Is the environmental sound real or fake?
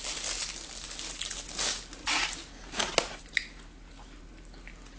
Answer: real